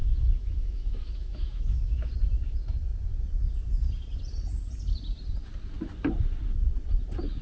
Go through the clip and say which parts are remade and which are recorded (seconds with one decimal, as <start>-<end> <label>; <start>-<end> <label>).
0.0-2.1 remade; 2.1-7.4 recorded

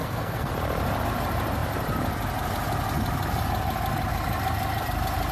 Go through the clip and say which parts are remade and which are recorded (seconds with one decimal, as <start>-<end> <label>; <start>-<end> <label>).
0.0-0.5 remade; 0.5-5.3 recorded

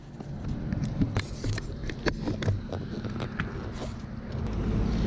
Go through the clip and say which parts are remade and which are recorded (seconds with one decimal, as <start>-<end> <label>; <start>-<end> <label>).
0.0-0.7 recorded; 0.7-1.8 remade; 1.8-5.1 recorded

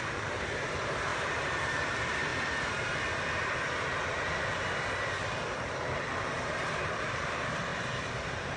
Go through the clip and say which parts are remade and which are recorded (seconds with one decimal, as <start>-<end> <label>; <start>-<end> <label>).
0.0-2.3 remade; 2.3-6.4 recorded; 6.4-8.6 remade

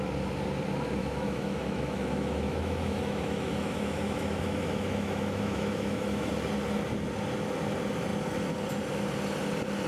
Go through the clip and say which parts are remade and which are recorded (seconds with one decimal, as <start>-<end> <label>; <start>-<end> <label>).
0.0-1.0 recorded; 1.0-6.3 remade; 6.3-9.9 recorded

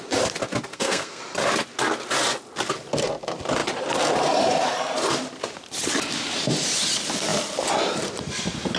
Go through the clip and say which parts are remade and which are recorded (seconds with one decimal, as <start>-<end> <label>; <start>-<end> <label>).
0.0-0.7 recorded; 0.7-1.2 remade; 1.2-8.8 recorded

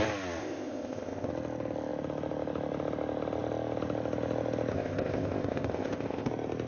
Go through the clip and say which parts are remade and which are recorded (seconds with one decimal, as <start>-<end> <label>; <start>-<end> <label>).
0.0-0.4 recorded; 0.4-1.3 remade; 1.3-4.7 recorded; 4.7-6.3 remade; 6.3-6.7 recorded